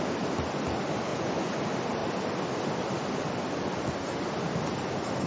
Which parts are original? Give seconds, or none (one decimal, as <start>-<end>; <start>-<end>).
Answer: 0.0-1.1; 1.6-5.3